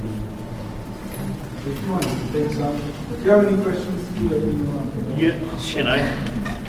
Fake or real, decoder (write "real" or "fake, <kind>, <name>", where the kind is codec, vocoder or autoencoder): real